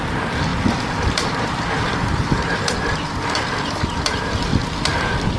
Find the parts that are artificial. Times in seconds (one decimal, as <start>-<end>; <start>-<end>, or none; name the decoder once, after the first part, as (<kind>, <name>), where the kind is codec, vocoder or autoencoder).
0.0-4.5 (vocoder, BigVGAN v2)